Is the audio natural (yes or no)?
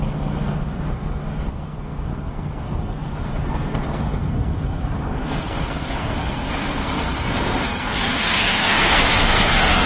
no